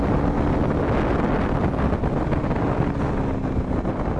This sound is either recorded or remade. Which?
recorded